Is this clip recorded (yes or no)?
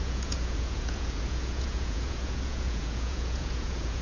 no